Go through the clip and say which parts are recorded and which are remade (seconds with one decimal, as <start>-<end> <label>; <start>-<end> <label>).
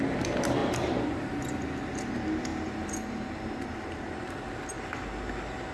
0.0-0.6 recorded; 0.6-1.4 remade; 1.4-2.5 recorded; 2.5-4.5 remade; 4.5-5.7 recorded